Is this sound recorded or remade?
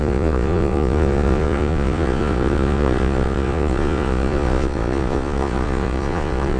remade